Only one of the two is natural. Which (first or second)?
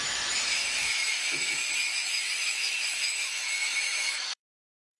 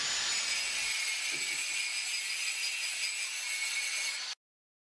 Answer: second